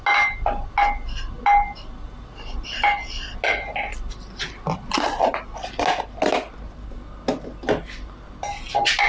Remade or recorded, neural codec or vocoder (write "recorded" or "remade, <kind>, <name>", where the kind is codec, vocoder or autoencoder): recorded